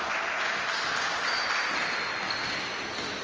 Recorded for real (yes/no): yes